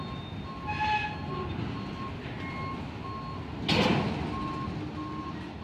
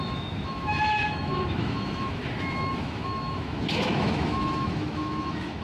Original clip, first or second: first